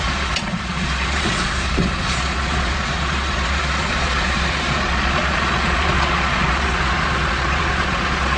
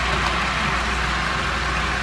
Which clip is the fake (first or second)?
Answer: first